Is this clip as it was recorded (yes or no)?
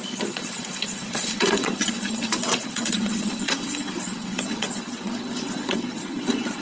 no